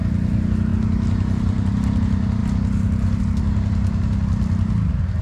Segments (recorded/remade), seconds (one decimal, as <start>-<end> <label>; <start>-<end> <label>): 0.0-5.2 recorded